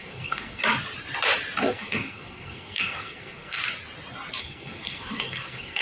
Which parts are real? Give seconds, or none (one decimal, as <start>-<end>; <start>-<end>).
0.6-1.6; 3.6-4.4